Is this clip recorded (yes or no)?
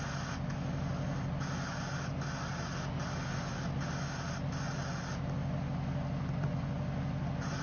yes